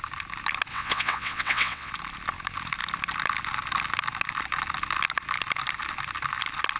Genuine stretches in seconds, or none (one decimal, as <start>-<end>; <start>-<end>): 0.0-0.7; 1.9-6.8